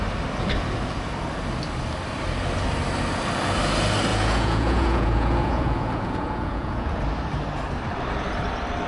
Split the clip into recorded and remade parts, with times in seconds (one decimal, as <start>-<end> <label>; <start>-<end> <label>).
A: 0.0-4.1 recorded; 4.1-7.0 remade; 7.0-8.9 recorded